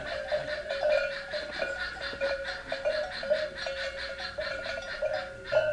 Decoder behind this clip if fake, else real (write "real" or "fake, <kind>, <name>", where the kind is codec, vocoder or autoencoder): real